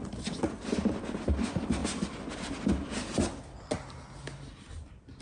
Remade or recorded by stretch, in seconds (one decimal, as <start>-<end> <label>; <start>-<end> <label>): 0.0-5.2 recorded